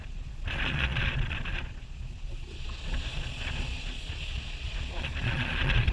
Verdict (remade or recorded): remade